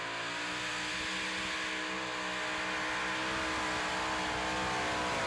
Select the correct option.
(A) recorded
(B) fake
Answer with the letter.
A